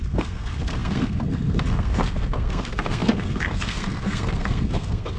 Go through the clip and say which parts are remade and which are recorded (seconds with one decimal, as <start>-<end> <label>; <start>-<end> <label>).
0.0-5.2 remade